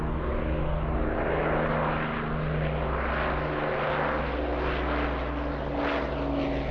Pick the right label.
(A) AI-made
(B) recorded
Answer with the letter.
B